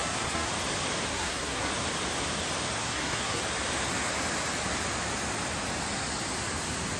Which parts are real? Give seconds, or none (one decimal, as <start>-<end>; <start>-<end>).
0.5-1.1; 1.7-2.8; 3.4-7.0